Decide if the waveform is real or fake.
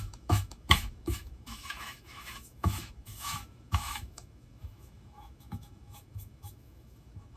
fake